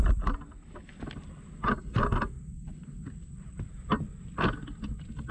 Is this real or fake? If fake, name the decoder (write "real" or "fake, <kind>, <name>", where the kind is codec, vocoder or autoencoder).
real